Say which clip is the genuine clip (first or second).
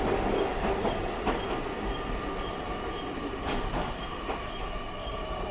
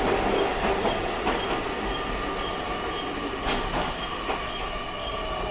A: second